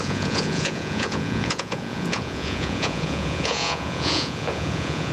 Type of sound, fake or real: fake